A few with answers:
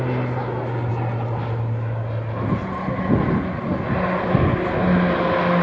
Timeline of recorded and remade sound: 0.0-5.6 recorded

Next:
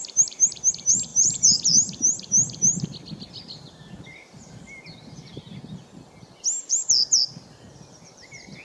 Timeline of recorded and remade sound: 0.0-0.7 recorded; 0.7-5.3 remade; 5.3-6.6 recorded; 6.6-8.6 remade